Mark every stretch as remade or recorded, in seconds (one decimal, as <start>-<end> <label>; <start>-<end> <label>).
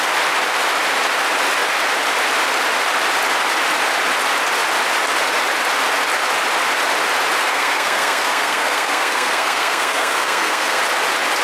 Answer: 0.0-7.4 recorded; 7.4-10.8 remade; 10.8-11.4 recorded